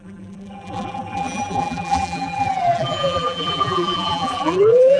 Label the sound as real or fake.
fake